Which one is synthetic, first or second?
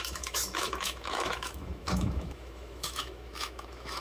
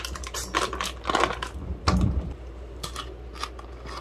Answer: first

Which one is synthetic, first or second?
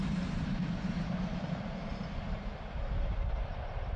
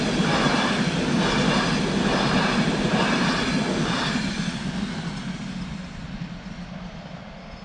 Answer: first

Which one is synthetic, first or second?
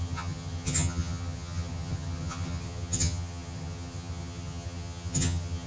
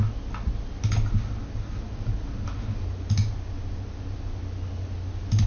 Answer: first